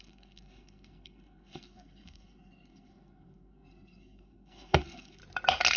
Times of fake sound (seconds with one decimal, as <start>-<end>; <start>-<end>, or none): 0.0-5.2